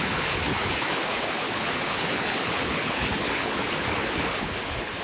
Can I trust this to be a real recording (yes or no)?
no